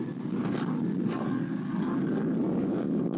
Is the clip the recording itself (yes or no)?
yes